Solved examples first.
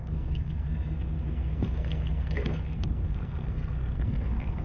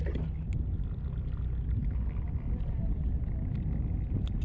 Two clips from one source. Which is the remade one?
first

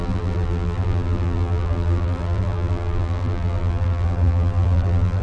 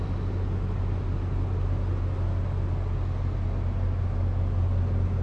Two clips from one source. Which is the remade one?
first